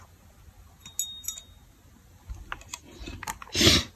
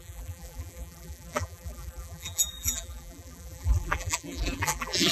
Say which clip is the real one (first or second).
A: first